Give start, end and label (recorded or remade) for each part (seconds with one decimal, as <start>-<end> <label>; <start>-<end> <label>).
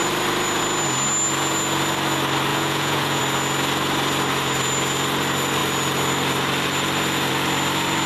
0.0-2.5 recorded; 2.5-3.2 remade; 3.2-8.1 recorded